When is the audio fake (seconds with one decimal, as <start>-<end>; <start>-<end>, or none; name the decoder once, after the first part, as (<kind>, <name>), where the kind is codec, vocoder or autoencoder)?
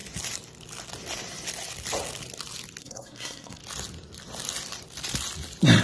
2.8-3.6 (codec, SNAC)